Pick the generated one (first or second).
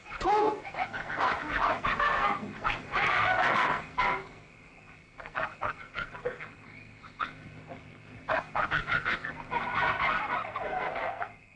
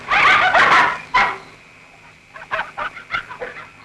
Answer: first